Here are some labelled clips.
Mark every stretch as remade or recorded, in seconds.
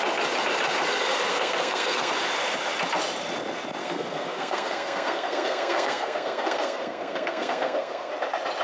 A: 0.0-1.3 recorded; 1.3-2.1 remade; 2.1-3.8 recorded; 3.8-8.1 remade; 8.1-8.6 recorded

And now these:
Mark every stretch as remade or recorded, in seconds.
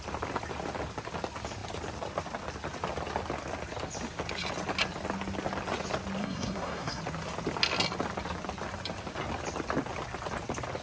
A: 0.0-6.2 recorded; 6.2-7.0 remade; 7.0-10.8 recorded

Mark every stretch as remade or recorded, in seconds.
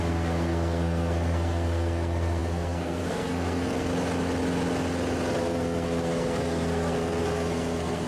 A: 0.0-3.9 remade; 3.9-5.4 recorded; 5.4-8.1 remade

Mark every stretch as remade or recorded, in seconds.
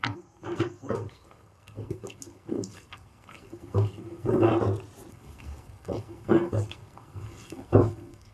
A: 0.0-4.5 remade; 4.5-5.1 recorded; 5.1-8.3 remade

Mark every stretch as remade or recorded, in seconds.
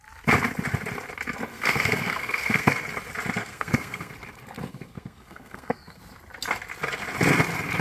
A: 0.0-1.5 recorded; 1.5-2.8 remade; 2.8-3.4 recorded; 3.4-4.1 remade; 4.1-4.7 recorded; 4.7-6.0 remade; 6.0-7.8 recorded